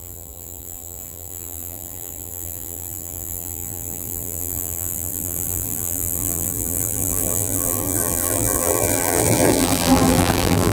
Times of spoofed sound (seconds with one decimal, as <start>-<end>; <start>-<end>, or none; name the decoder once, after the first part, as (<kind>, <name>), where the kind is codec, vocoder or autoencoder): 0.0-10.7 (vocoder, BigVGAN v2)